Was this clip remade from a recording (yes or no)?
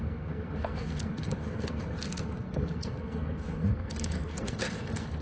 yes